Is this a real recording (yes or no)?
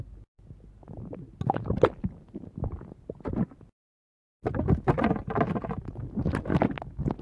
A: yes